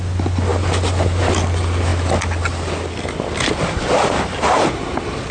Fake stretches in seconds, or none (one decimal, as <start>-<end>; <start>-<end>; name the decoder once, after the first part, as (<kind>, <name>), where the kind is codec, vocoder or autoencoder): none